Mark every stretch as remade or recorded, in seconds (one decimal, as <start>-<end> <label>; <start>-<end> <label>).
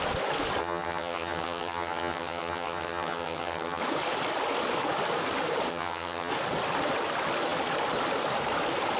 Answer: 0.0-0.6 recorded; 0.6-3.8 remade; 3.8-5.7 recorded; 5.7-6.3 remade; 6.3-9.0 recorded